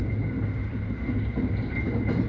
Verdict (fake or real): real